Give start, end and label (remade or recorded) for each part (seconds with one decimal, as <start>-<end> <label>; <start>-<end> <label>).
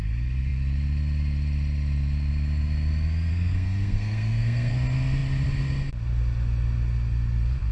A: 0.0-3.3 recorded; 3.3-4.7 remade; 4.7-7.7 recorded